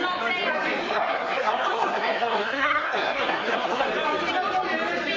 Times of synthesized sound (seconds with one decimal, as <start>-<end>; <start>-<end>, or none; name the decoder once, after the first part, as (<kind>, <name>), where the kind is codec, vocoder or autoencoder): 0.8-3.9 (codec, SNAC)